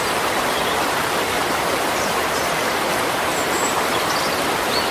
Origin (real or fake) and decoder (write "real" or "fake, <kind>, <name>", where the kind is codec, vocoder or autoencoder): fake, vocoder, BigVGAN v2